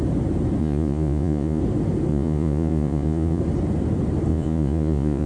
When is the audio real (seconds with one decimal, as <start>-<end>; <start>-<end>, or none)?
0.0-0.6; 1.6-2.1; 3.4-4.3